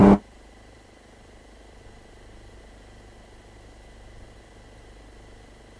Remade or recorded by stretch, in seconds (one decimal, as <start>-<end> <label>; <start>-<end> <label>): 0.0-2.6 remade; 2.6-5.8 recorded